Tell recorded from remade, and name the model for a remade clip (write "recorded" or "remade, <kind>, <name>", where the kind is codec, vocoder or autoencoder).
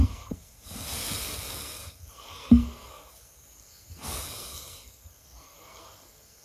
remade, codec, SNAC